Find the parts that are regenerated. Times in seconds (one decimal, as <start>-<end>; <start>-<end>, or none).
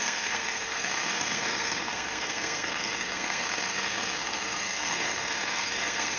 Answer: 0.0-6.2